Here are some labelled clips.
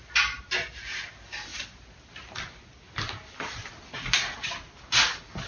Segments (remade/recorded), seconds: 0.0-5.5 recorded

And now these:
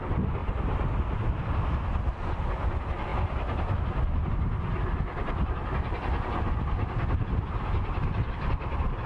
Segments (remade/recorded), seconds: 0.0-9.1 recorded

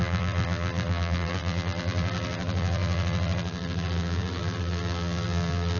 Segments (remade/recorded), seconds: 0.0-5.8 remade

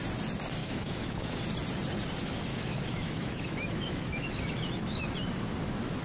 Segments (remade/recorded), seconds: 0.0-0.6 recorded; 0.6-1.4 remade; 1.4-2.5 recorded; 2.5-5.0 remade; 5.0-6.0 recorded

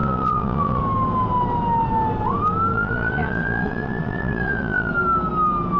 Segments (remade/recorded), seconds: 0.0-0.8 remade; 0.8-2.7 recorded; 2.7-4.9 remade; 4.9-5.8 recorded

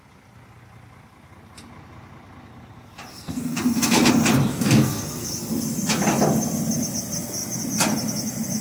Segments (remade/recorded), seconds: 0.0-3.1 recorded; 3.1-4.1 remade; 4.1-4.5 recorded; 4.5-5.3 remade; 5.3-8.6 recorded

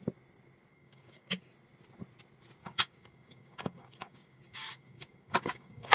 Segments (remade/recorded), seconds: 0.0-0.7 recorded; 0.7-1.5 remade; 1.5-2.6 recorded; 2.6-5.9 remade